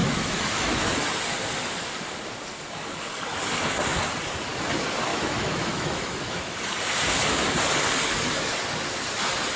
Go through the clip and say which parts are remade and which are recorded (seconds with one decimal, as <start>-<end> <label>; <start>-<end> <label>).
0.0-1.1 remade; 1.1-5.1 recorded; 5.1-6.5 remade; 6.5-9.6 recorded